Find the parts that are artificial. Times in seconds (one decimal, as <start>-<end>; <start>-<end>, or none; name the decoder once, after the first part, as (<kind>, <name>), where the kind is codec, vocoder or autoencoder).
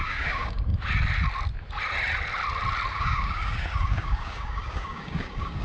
0.0-0.7 (codec, DAC); 2.9-5.6